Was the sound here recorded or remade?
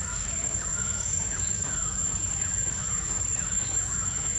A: remade